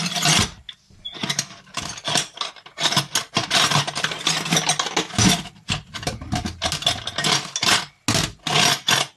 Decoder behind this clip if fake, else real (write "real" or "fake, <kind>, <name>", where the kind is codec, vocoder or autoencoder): real